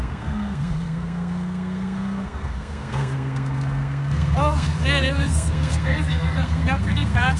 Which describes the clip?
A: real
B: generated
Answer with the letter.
B